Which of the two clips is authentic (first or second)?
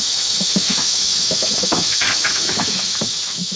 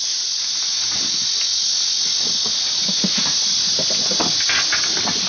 second